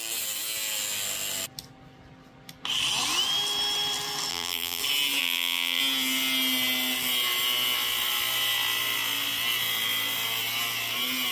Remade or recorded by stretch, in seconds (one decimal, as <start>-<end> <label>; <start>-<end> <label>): 0.0-4.3 recorded; 4.3-4.8 remade; 4.8-5.2 recorded; 5.2-5.8 remade; 5.8-11.3 recorded